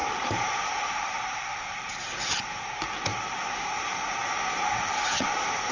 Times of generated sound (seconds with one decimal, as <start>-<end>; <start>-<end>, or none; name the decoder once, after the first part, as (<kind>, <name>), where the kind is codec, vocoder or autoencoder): 0.0-2.4 (vocoder, BigVGAN v2); 3.1-4.0